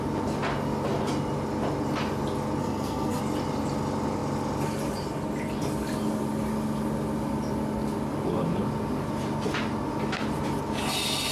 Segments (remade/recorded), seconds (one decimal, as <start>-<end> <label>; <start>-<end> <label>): 0.0-2.6 recorded; 2.6-3.2 remade; 3.2-11.3 recorded